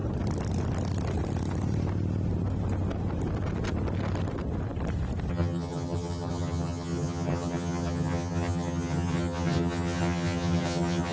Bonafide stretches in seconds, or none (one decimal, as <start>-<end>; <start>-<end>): 0.0-5.3